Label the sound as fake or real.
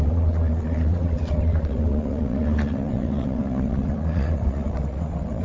fake